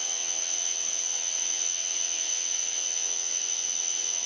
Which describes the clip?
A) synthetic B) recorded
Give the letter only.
A